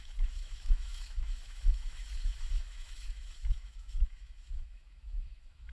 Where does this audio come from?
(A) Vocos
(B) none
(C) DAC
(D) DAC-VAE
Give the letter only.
D